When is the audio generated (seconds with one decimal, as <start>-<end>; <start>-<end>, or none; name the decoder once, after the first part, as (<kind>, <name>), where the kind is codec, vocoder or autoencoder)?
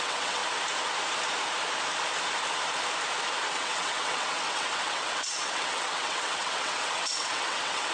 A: 0.0-0.4 (vocoder, WaveNeXt); 3.5-7.9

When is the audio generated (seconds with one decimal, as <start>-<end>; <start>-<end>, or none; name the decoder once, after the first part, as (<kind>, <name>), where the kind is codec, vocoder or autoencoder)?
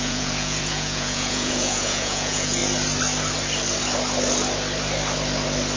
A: 0.0-2.6 (vocoder, Vocos)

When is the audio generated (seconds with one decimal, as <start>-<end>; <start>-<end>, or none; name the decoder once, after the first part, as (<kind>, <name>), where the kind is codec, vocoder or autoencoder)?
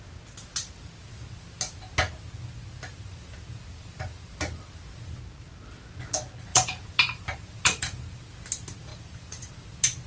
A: 2.9-4.3 (vocoder, BigVGAN v2); 6.5-8.2; 8.9-9.5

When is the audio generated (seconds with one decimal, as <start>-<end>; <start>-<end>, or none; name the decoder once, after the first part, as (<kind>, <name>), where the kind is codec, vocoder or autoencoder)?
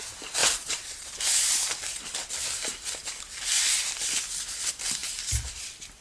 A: 0.4-1.2 (vocoder, Vocos)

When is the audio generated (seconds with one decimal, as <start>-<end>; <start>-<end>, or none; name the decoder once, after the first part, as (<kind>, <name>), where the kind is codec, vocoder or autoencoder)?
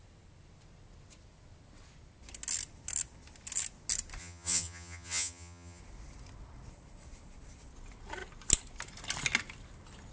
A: 4.2-5.8 (vocoder, HiFi-GAN)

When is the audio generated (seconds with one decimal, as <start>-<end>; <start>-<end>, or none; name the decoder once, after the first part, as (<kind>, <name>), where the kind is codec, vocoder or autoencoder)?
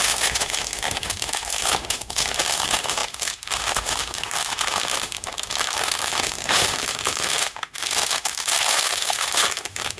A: 0.0-10.0 (autoencoder, DAC-VAE)